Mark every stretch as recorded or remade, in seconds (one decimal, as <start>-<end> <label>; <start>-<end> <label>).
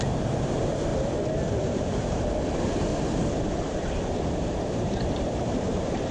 0.0-0.9 remade; 0.9-1.5 recorded; 1.5-2.9 remade; 2.9-4.4 recorded; 4.4-6.1 remade